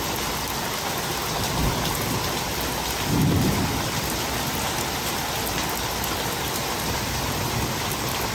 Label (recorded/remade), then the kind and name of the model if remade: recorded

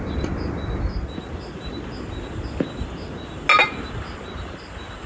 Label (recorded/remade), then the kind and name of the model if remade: recorded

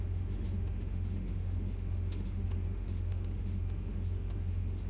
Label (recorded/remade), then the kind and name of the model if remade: remade, autoencoder, DAC-VAE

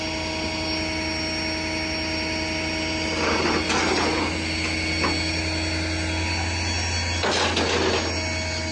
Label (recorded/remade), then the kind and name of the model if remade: recorded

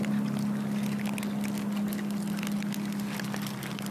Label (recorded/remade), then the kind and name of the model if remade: recorded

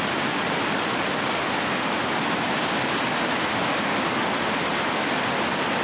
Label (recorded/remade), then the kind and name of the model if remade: recorded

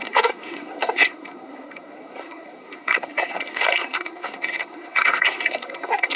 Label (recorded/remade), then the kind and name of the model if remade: remade, codec, SNAC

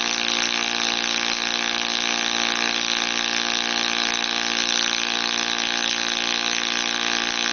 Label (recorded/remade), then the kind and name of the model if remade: recorded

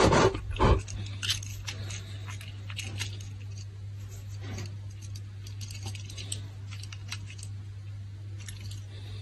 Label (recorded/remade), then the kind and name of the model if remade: recorded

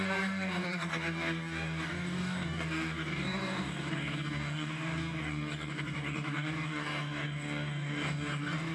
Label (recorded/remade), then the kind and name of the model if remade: remade, codec, DAC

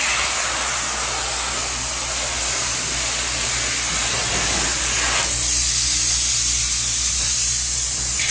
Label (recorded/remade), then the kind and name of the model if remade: recorded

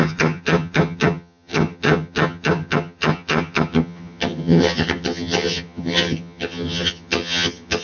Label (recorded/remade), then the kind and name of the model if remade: remade, vocoder, HiFi-GAN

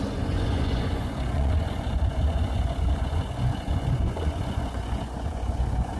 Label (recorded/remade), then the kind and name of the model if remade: remade, vocoder, Vocos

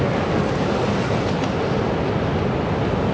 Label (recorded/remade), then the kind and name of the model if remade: recorded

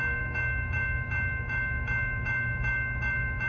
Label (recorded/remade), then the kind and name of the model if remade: remade, autoencoder, DAC-VAE